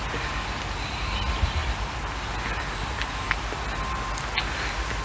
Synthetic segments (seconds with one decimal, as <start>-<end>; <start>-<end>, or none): none